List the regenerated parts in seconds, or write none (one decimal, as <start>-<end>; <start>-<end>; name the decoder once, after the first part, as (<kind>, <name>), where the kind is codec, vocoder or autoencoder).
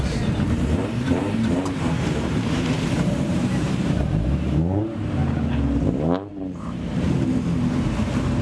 0.0-5.2 (vocoder, BigVGAN v2); 6.3-8.4